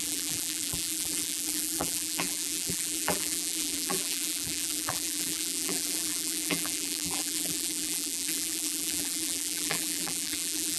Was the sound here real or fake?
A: fake